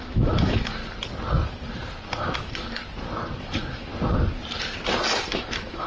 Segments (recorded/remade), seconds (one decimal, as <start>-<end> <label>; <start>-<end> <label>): 0.0-0.8 remade; 0.8-2.2 recorded; 2.2-2.8 remade; 2.8-3.4 recorded; 3.4-3.9 remade; 3.9-5.3 recorded; 5.3-5.9 remade